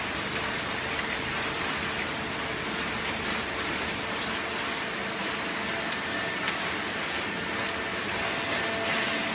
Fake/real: real